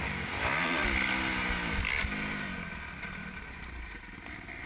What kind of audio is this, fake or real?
real